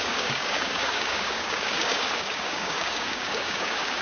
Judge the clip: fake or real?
fake